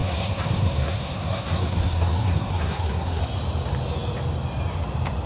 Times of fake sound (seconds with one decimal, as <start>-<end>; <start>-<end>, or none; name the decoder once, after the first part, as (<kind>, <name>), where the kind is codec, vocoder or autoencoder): 0.0-3.2 (codec, SNAC)